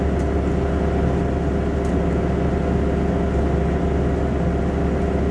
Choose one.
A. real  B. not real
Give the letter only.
A